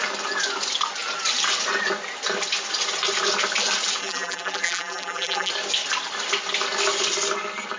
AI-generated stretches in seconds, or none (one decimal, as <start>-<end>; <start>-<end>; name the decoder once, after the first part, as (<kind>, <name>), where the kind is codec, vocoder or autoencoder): 4.0-5.5 (vocoder, BigVGAN v2)